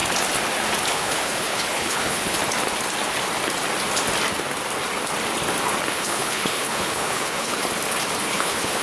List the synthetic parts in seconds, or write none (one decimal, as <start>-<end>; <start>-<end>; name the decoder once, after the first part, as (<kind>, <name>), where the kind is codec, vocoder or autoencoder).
0.9-2.4 (codec, HILCodec); 5.9-7.6; 8.2-8.8